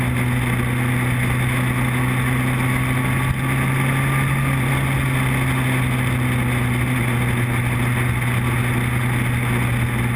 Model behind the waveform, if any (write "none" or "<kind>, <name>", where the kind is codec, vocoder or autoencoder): none